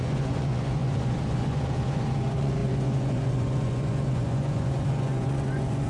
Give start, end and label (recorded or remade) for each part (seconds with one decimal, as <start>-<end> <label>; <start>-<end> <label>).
0.0-5.9 remade